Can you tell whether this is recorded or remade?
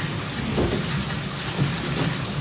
recorded